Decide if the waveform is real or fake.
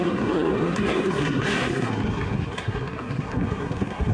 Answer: fake